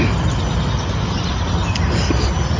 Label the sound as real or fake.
real